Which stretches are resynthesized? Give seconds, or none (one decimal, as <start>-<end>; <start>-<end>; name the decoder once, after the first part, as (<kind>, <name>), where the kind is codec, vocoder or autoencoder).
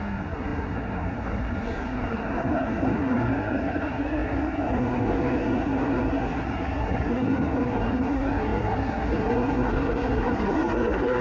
0.0-11.2 (codec, SNAC)